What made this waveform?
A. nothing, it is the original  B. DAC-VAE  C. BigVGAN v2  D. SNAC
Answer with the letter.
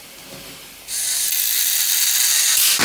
A